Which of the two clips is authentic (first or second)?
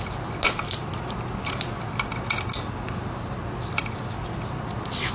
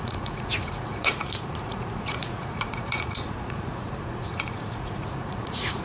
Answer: first